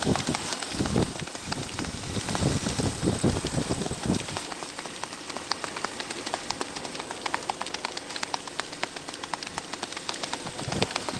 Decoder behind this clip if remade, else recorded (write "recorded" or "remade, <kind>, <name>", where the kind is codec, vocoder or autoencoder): recorded